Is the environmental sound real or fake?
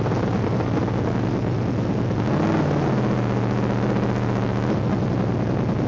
real